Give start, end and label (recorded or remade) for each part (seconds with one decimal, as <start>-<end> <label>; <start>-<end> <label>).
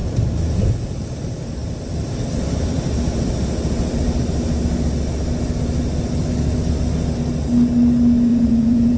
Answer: 0.0-8.3 recorded; 8.3-9.0 remade